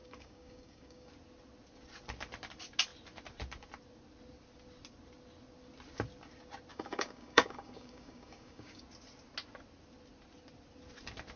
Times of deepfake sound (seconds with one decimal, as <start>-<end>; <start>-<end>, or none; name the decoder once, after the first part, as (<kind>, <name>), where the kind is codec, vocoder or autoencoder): 0.0-1.1 (codec, DAC); 6.7-8.8